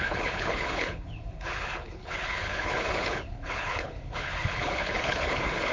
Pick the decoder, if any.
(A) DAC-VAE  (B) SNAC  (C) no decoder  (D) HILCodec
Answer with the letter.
D